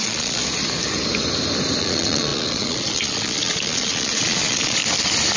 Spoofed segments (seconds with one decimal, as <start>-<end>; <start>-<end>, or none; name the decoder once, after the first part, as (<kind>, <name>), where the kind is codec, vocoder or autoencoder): 0.0-0.4 (vocoder, Vocos); 1.8-4.8